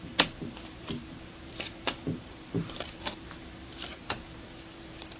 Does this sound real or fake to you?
fake